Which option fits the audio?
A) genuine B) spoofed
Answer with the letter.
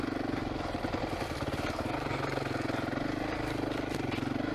A